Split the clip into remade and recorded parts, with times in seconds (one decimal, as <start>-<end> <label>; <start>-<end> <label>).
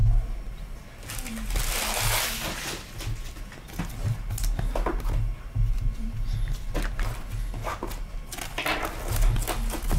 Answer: 0.0-10.0 recorded